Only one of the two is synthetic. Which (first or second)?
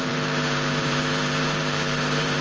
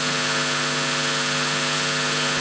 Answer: first